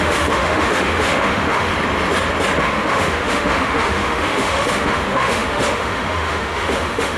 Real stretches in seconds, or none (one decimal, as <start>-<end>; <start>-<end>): 1.7-2.6